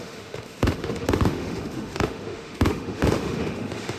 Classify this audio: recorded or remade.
remade